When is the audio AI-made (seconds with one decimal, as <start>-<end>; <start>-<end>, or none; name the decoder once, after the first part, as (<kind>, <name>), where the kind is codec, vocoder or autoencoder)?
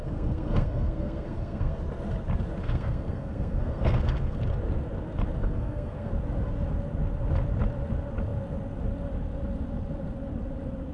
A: 0.0-1.8 (codec, SNAC); 2.6-4.4; 5.4-6.1